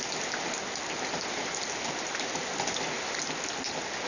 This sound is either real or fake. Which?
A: real